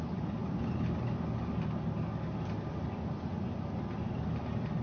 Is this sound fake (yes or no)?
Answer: no